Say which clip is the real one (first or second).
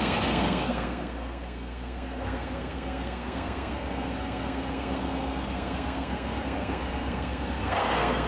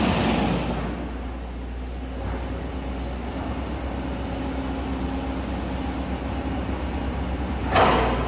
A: second